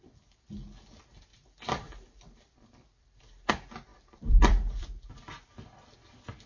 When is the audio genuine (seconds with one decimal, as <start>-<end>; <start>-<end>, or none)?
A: 0.0-1.3; 3.5-3.9; 5.2-6.5